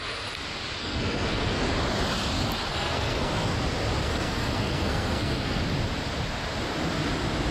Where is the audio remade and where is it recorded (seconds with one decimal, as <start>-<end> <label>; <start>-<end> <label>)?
0.0-0.8 recorded; 0.8-1.6 remade; 1.6-2.7 recorded; 2.7-3.5 remade; 3.5-4.0 recorded; 4.0-5.6 remade; 5.6-7.5 recorded